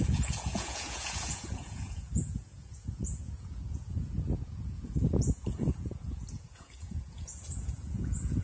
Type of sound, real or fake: fake